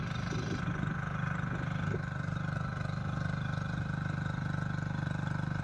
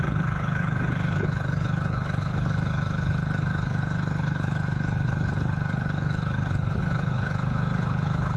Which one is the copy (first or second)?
second